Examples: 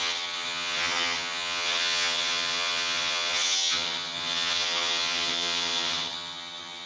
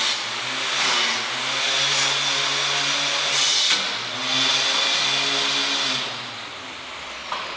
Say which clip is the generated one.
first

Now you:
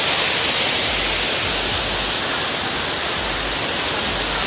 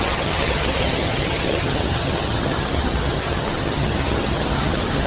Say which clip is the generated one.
second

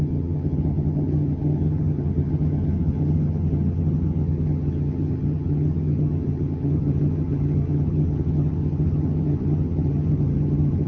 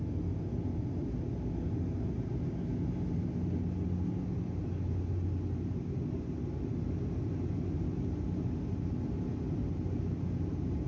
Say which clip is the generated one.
first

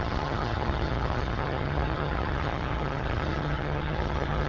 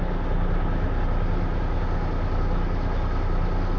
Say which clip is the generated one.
first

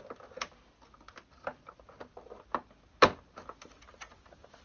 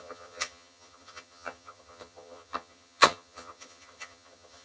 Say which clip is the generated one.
second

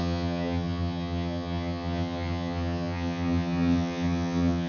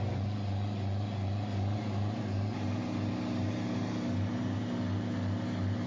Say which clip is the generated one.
first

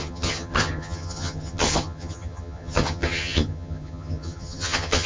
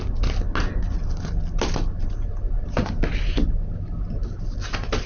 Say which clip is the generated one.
first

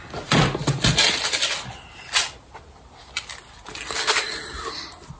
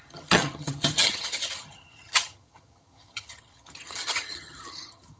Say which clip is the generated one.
second